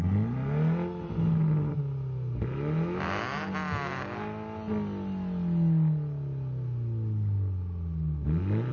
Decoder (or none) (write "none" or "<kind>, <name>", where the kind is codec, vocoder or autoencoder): none